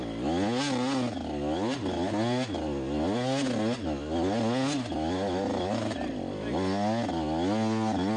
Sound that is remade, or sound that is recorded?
recorded